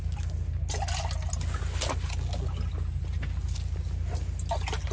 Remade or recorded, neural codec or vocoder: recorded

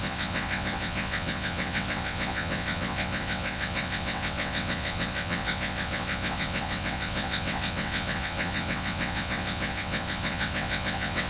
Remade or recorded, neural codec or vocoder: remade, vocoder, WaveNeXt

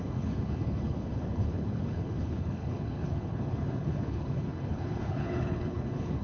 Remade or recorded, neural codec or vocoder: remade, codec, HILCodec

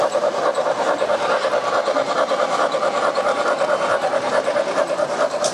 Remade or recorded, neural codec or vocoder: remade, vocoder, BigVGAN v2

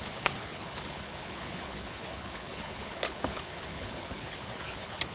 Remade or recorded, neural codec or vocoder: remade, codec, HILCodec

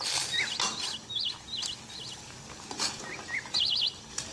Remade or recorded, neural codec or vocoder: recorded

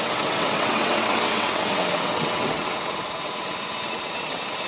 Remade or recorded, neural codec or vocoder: remade, vocoder, WaveNeXt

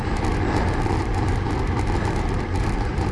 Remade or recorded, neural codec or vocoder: remade, vocoder, BigVGAN v2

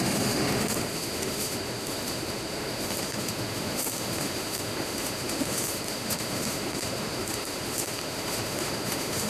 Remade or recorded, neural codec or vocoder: remade, autoencoder, DAC-VAE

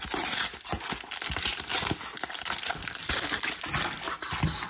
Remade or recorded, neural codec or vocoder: recorded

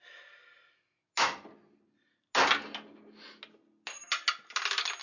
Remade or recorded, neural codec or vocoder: recorded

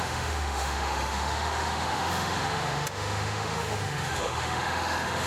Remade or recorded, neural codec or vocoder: remade, autoencoder, DAC-VAE